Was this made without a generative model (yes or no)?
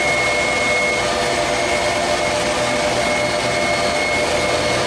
yes